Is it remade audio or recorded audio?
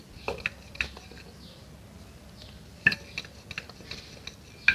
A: recorded